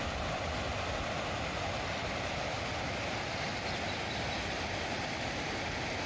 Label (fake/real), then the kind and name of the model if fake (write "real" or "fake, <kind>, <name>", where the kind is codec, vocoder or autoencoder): real